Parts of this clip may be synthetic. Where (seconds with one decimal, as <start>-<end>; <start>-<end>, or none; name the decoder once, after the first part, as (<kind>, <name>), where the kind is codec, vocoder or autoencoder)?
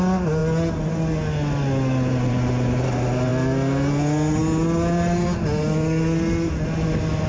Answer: none